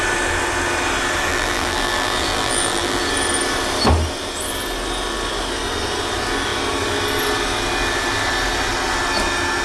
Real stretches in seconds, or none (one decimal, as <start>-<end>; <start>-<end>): 0.0-1.3; 3.0-9.6